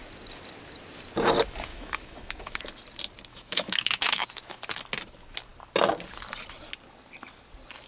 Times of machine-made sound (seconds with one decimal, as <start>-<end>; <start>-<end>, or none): 1.7-2.6; 3.3-4.6